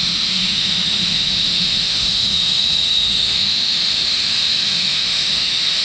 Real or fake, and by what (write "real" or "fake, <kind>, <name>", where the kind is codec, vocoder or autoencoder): fake, autoencoder, DAC-VAE